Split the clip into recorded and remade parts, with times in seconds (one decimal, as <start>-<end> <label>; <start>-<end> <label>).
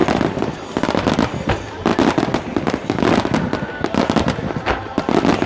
0.0-1.5 remade; 1.5-1.9 recorded; 1.9-5.5 remade